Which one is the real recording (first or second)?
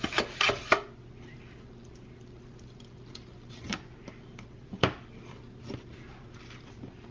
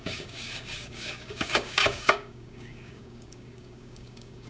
first